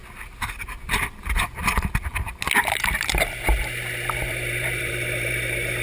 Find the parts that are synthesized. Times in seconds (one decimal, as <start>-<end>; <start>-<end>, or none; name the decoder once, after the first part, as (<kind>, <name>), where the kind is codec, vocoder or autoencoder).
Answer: 2.6-5.8 (vocoder, BigVGAN v2)